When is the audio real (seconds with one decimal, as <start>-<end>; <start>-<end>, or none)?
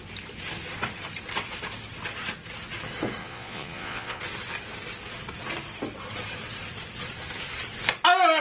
0.0-3.2; 4.2-8.4